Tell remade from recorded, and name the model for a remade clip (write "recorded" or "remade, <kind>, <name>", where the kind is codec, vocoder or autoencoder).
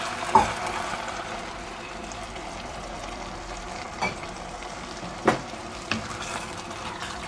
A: remade, vocoder, BigVGAN v2